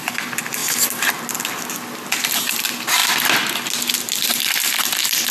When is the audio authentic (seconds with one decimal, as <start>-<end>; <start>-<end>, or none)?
0.0-5.3